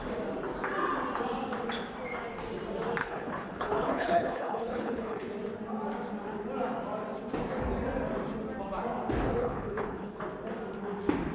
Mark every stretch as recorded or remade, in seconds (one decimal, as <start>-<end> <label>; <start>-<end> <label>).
0.0-3.0 recorded; 3.0-5.3 remade; 5.3-9.4 recorded; 9.4-10.2 remade; 10.2-11.3 recorded